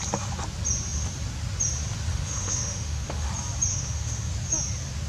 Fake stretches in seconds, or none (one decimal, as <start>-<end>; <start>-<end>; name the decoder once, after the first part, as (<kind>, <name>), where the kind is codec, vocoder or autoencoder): 2.1-3.3 (autoencoder, DAC-VAE); 3.7-4.3